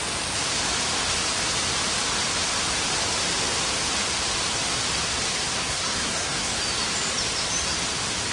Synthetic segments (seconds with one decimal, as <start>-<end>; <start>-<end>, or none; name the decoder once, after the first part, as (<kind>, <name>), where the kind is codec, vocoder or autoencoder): 5.5-6.5 (codec, SNAC)